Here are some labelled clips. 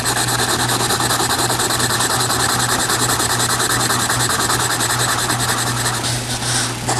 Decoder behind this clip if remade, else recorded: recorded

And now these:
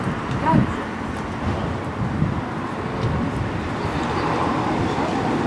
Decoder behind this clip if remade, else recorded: recorded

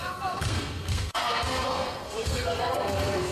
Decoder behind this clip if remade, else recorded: remade, codec, SNAC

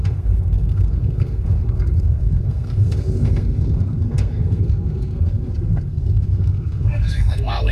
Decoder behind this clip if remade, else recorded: remade, codec, SNAC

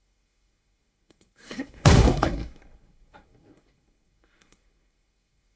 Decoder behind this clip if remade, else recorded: remade, codec, SNAC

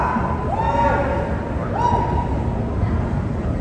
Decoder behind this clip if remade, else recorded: recorded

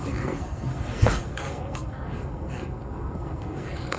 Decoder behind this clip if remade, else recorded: remade, codec, SNAC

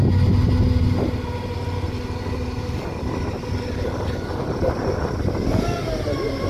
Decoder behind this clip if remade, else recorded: recorded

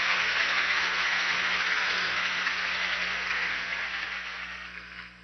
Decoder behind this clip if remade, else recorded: remade, codec, SNAC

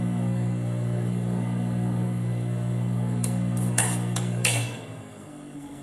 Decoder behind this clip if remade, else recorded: remade, codec, SNAC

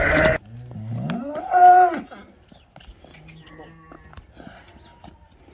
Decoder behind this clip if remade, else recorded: recorded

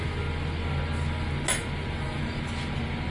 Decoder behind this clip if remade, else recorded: recorded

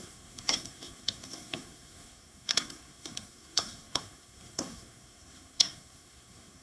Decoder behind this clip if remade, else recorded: remade, codec, SNAC